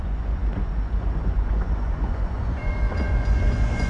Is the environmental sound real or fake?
fake